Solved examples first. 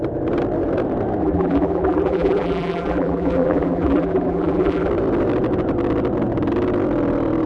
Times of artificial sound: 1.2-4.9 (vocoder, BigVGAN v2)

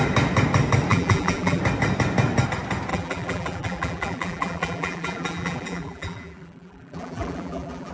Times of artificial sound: 0.9-1.6 (vocoder, BigVGAN v2); 2.9-7.9

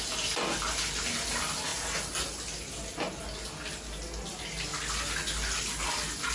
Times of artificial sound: none